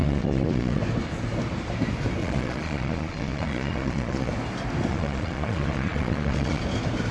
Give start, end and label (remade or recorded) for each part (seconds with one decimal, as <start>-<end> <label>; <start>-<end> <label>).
0.0-0.8 remade; 0.8-2.2 recorded; 2.2-4.3 remade; 4.3-4.9 recorded; 4.9-6.6 remade; 6.6-7.1 recorded